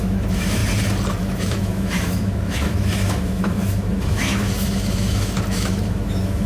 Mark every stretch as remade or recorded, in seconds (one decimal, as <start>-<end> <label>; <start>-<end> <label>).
0.0-0.6 remade; 0.6-1.2 recorded; 1.2-6.5 remade

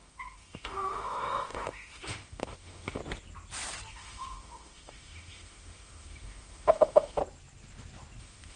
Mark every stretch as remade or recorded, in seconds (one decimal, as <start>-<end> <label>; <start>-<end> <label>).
0.0-3.0 remade; 3.0-3.9 recorded; 3.9-7.2 remade; 7.2-8.2 recorded; 8.2-8.6 remade

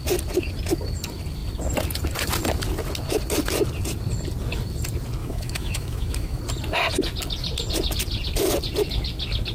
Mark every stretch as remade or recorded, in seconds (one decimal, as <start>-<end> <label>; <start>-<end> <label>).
0.0-5.2 recorded; 5.2-6.4 remade; 6.4-9.5 recorded

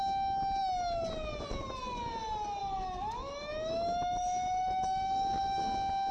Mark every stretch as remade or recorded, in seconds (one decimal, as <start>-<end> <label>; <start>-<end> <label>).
0.0-2.6 recorded; 2.6-5.6 remade; 5.6-6.1 recorded